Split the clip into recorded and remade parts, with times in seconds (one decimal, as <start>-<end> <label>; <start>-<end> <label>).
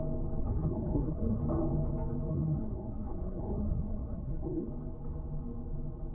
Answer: 0.0-0.4 recorded; 0.4-1.4 remade; 1.4-2.3 recorded; 2.3-4.7 remade; 4.7-6.1 recorded